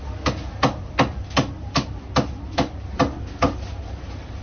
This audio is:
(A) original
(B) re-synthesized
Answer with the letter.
A